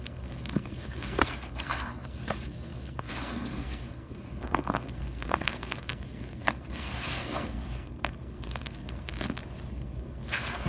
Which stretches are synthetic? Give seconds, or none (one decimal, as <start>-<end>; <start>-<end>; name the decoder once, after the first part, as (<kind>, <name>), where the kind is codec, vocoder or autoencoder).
0.0-9.1 (codec, SNAC); 9.7-10.7